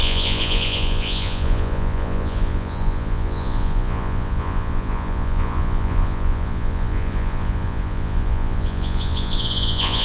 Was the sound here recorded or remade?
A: remade